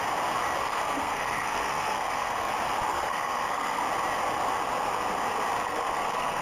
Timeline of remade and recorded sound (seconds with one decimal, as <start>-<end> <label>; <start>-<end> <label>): 0.0-0.6 recorded; 0.6-2.5 remade; 2.5-2.9 recorded; 2.9-3.8 remade; 3.8-5.6 recorded; 5.6-6.4 remade